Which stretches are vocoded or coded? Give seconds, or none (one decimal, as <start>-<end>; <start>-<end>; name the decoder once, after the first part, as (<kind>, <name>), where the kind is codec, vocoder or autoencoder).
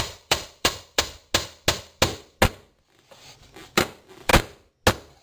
0.0-1.2 (vocoder, BigVGAN v2); 3.7-4.3